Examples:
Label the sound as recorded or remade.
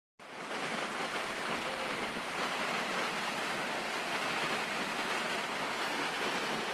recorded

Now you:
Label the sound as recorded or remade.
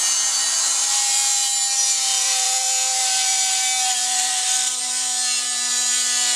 remade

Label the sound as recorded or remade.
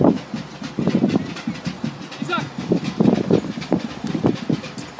recorded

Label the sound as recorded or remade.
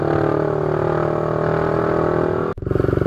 recorded